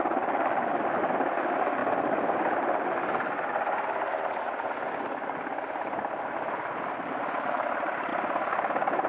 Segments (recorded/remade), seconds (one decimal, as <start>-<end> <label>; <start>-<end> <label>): 0.0-9.1 recorded